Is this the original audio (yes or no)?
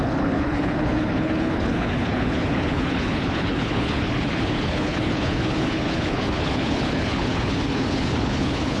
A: no